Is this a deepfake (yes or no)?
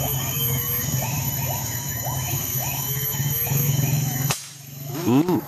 yes